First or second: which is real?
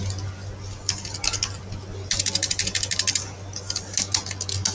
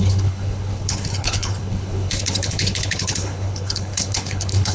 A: first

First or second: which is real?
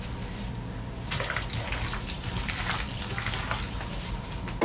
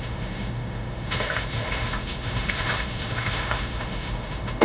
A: first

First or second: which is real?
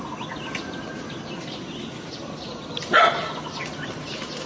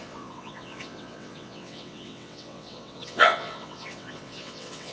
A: first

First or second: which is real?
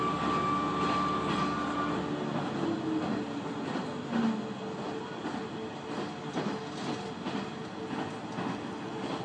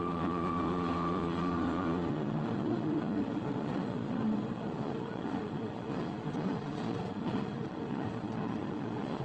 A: first